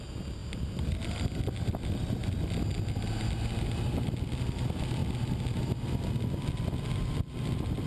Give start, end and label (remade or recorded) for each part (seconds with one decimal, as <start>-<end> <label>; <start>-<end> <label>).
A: 0.0-7.9 recorded